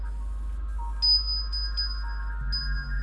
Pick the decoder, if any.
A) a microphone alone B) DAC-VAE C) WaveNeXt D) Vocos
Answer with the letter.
A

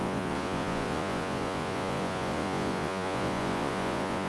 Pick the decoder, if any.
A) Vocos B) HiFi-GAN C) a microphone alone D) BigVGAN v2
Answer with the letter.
A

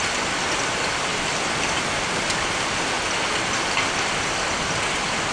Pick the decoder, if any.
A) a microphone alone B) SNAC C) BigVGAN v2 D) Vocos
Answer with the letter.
A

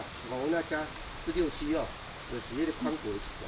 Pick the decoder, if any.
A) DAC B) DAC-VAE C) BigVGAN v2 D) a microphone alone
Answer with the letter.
D